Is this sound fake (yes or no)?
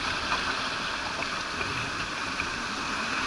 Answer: no